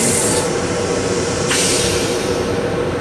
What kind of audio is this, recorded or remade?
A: remade